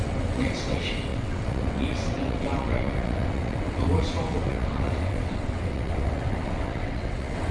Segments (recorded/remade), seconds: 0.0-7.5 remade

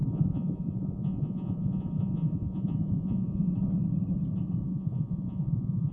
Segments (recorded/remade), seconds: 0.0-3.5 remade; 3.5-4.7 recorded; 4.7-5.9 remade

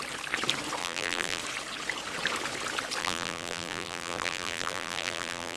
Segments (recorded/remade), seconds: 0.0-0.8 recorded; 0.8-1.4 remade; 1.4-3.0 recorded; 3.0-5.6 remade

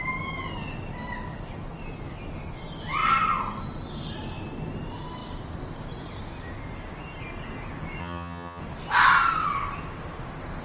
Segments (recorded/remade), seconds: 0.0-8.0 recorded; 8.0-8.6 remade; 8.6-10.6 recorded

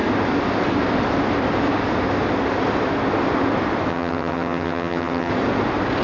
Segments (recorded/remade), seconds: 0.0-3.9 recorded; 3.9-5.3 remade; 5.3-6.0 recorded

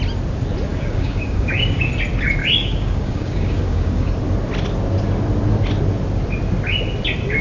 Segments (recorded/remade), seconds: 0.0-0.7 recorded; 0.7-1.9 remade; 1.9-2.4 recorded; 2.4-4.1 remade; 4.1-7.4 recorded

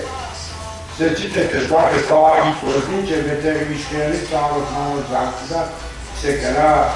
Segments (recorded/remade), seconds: 0.0-1.2 recorded; 1.2-2.9 remade; 2.9-7.0 recorded